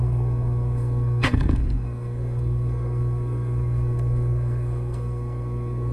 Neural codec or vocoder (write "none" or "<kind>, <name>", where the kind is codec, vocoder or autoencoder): codec, SNAC